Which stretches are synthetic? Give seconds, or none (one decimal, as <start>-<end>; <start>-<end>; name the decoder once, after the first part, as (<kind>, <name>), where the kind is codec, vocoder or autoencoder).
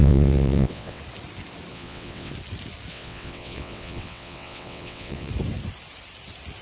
0.0-1.0 (vocoder, WaveNeXt); 1.7-2.3; 2.9-5.3